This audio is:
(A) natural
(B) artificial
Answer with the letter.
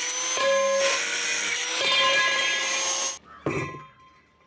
A